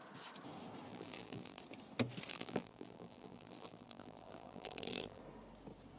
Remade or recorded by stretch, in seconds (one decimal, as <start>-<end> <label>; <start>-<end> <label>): 0.0-0.9 recorded; 0.9-1.6 remade; 1.6-2.3 recorded; 2.3-5.2 remade; 5.2-6.0 recorded